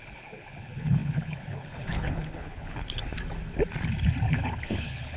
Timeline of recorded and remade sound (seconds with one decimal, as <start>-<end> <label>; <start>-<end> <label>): 0.0-3.1 remade; 3.1-4.3 recorded; 4.3-5.2 remade